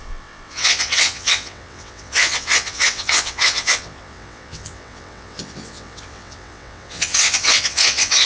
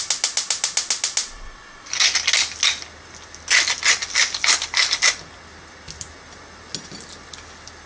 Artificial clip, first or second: first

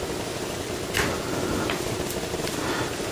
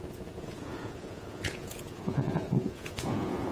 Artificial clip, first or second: second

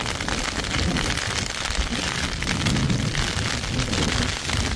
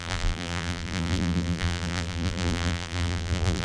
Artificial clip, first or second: second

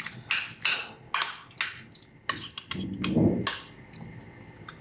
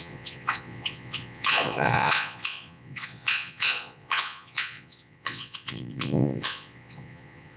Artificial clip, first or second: second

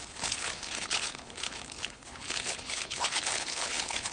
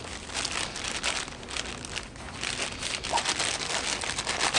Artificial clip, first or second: first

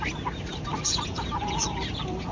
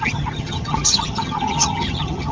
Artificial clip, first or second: second